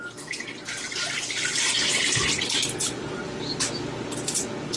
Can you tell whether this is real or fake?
real